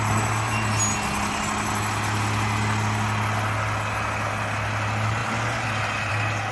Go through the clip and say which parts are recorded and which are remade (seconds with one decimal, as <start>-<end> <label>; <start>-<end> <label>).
0.0-6.5 recorded